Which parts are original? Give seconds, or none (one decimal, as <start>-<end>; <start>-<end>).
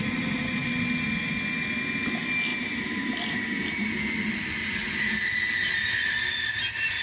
0.0-2.5; 3.9-7.0